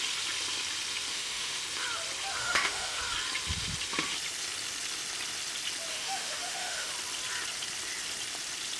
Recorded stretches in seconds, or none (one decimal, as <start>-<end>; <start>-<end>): 0.0-1.1; 1.6-2.4; 3.0-5.9; 6.9-8.8